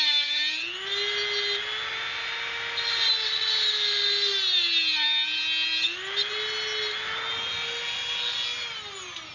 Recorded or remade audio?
recorded